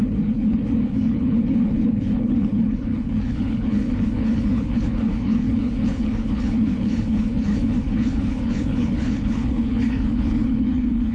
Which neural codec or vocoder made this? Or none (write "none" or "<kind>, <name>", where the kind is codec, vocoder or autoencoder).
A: codec, HILCodec